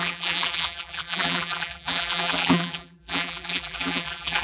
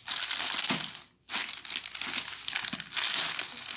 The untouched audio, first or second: second